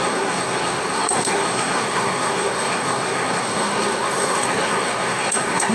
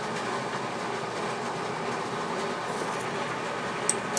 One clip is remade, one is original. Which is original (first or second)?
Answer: second